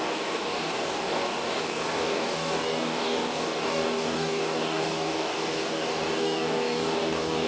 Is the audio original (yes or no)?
no